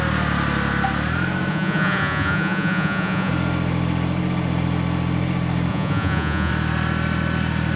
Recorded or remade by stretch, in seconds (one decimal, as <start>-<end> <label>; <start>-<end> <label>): 0.0-1.5 recorded; 1.5-3.3 remade; 3.3-5.7 recorded; 5.7-6.5 remade; 6.5-7.8 recorded